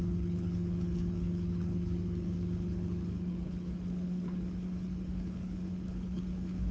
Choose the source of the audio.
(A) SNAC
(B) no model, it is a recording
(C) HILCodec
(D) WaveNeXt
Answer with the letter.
C